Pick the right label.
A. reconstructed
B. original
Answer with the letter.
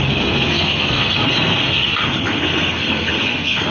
A